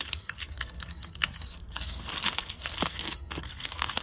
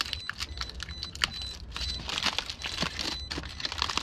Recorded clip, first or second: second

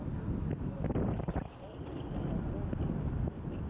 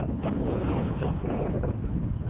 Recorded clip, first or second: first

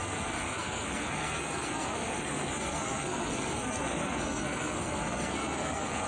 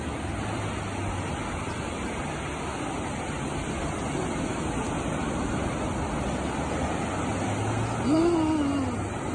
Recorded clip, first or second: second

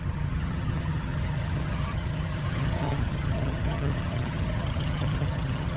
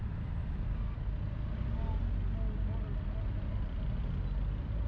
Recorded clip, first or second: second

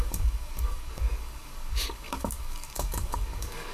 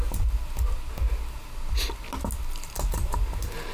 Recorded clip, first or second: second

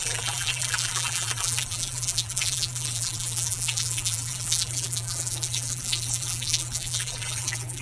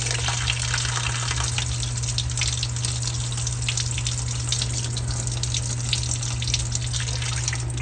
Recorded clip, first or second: second